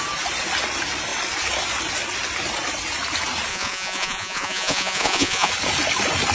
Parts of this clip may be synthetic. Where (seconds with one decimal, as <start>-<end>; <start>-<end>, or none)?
3.5-5.5